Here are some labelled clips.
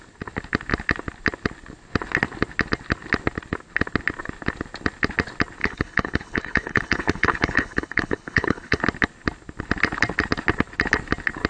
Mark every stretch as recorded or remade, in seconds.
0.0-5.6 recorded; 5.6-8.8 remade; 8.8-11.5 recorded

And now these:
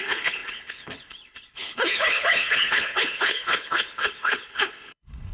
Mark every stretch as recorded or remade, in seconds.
0.0-5.3 remade